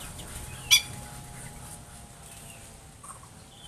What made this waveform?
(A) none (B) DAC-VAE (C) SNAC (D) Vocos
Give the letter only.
A